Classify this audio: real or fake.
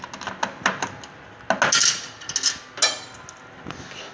real